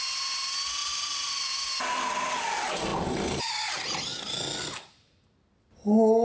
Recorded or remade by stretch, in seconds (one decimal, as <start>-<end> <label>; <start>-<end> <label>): 0.0-6.2 recorded